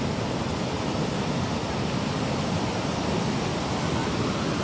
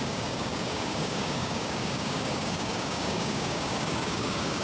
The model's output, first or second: second